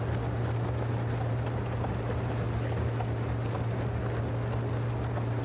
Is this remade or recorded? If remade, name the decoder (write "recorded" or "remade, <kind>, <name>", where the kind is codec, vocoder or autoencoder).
recorded